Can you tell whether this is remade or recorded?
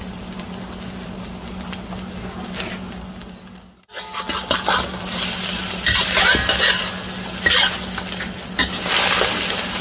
recorded